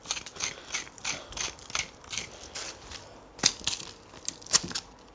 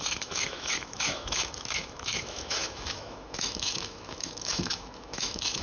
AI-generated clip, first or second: second